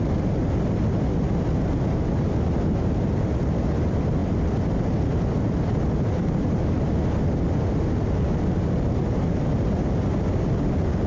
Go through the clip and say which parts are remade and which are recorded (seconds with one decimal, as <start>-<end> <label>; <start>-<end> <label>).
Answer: 0.0-11.1 recorded

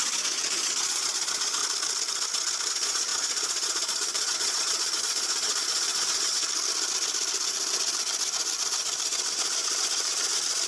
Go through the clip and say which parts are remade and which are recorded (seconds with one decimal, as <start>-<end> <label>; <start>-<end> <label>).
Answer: 0.0-1.6 remade; 1.6-2.7 recorded; 2.7-6.4 remade; 6.4-10.7 recorded

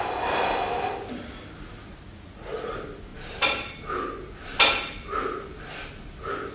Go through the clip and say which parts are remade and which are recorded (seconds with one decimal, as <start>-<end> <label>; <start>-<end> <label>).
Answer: 0.0-1.9 recorded; 1.9-2.7 remade; 2.7-6.5 recorded

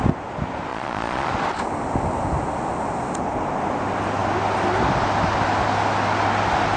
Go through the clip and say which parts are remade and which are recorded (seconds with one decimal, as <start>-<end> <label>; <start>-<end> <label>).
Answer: 0.0-0.7 recorded; 0.7-1.3 remade; 1.3-6.8 recorded

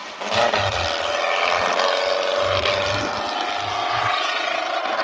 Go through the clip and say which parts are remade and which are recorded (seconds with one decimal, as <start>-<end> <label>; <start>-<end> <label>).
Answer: 0.0-3.8 recorded; 3.8-4.6 remade; 4.6-5.0 recorded

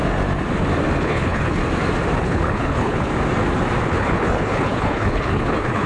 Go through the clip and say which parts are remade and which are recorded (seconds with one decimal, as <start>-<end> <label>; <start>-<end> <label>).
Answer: 0.0-1.0 recorded; 1.0-1.6 remade; 1.6-2.2 recorded; 2.2-3.1 remade; 3.1-3.9 recorded; 3.9-5.9 remade

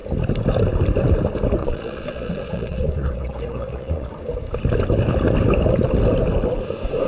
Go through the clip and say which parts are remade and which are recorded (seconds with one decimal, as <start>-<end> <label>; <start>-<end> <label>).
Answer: 0.0-1.6 recorded; 1.6-4.1 remade; 4.1-7.1 recorded

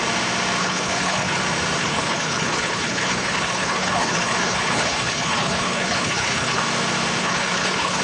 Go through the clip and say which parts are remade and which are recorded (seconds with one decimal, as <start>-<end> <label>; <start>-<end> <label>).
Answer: 0.0-0.6 recorded; 0.6-1.4 remade; 1.4-1.8 recorded; 1.8-6.6 remade; 6.6-7.2 recorded; 7.2-8.0 remade